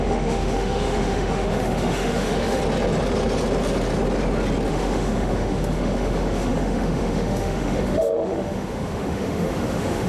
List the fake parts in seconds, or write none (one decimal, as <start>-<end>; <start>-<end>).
0.0-2.6; 4.7-10.1